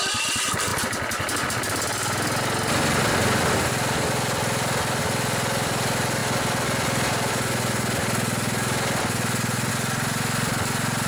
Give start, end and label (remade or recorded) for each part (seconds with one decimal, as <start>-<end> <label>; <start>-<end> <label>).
0.0-11.1 recorded